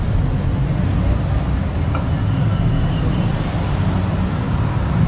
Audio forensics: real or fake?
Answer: real